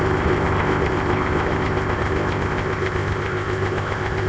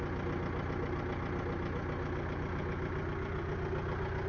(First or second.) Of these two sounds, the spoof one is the first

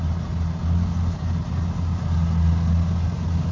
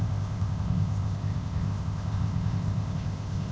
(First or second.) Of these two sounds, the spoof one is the second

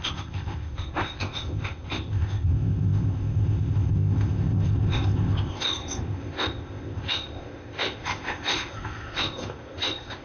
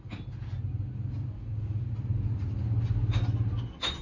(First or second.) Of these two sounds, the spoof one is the first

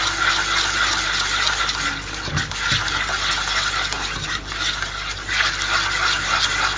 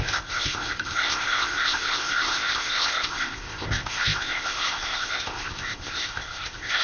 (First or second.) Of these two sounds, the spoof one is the second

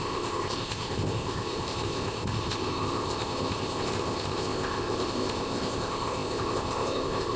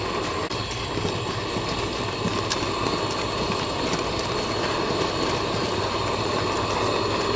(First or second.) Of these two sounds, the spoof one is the first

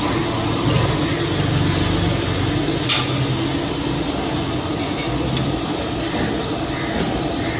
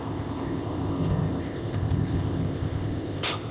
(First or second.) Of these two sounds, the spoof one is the second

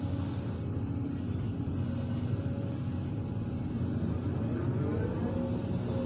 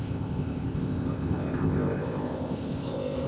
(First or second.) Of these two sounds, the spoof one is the second